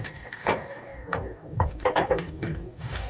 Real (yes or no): no